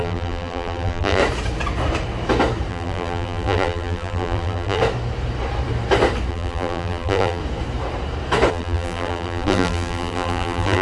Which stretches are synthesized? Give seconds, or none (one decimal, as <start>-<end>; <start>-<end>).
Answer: 0.0-1.2; 2.7-4.8; 6.3-7.4; 8.5-10.8